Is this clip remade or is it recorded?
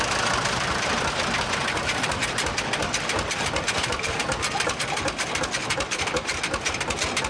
remade